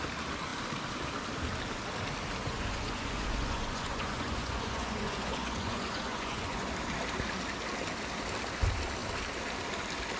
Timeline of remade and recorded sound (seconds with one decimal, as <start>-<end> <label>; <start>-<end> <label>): 0.0-2.4 recorded; 2.4-6.7 remade; 6.7-10.2 recorded